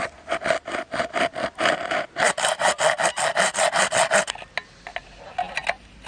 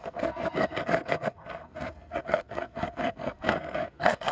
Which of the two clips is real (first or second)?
first